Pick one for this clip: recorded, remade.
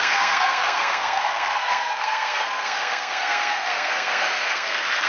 remade